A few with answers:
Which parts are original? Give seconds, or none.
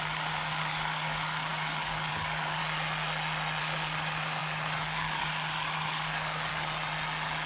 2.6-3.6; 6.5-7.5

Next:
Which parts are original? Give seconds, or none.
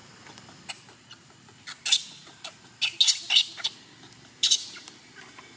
0.0-5.6